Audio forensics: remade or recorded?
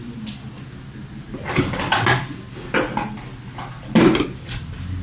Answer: recorded